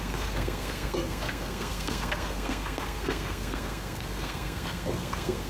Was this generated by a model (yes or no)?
yes